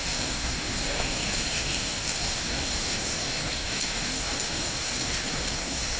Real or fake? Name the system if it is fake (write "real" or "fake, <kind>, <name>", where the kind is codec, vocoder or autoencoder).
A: fake, codec, DAC